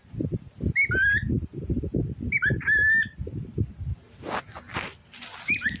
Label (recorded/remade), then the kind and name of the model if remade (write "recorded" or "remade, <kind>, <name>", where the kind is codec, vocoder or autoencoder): recorded